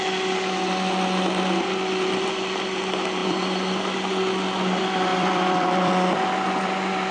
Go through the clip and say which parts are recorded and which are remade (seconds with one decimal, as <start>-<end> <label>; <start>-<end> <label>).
0.0-5.1 recorded; 5.1-5.9 remade; 5.9-7.1 recorded